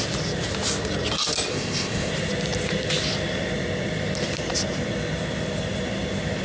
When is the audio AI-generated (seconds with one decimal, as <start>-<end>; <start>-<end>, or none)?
1.5-2.1